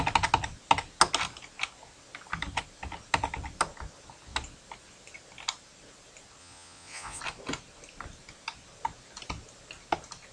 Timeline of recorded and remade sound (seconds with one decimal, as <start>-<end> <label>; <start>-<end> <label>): 0.0-6.4 recorded; 6.4-7.2 remade; 7.2-10.3 recorded